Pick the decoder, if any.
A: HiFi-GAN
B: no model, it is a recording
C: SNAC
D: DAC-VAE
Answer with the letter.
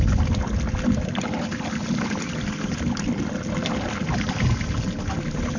B